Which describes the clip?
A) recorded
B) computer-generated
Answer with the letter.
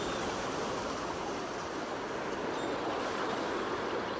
A